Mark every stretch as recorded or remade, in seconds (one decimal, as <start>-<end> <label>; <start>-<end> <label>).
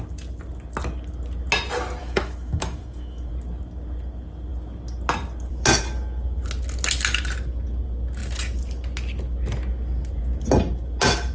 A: 0.0-2.0 recorded; 2.0-3.3 remade; 3.3-11.3 recorded